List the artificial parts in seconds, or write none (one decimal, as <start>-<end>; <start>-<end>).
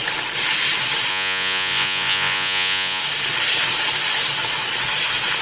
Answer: 1.1-3.0